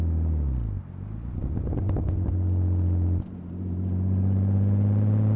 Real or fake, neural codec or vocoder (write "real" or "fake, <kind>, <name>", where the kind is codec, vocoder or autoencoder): real